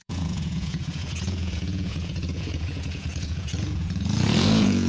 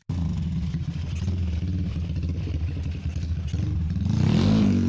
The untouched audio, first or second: second